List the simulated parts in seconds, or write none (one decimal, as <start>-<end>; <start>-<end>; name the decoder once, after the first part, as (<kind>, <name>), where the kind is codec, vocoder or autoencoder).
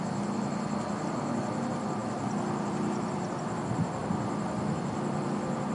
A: none